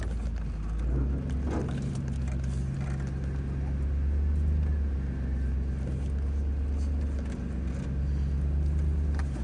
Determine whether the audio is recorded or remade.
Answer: recorded